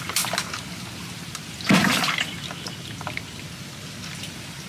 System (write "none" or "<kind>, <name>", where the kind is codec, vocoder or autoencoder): none